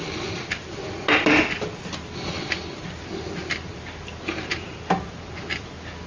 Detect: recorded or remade recorded